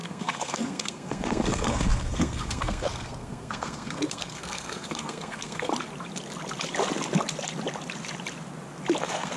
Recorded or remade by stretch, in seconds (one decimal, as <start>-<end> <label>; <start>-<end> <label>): 0.0-5.7 remade; 5.7-9.0 recorded; 9.0-9.4 remade